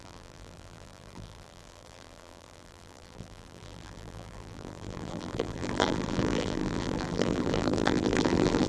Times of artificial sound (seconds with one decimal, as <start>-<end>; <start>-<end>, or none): 0.0-8.7